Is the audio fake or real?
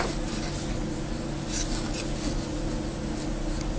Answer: real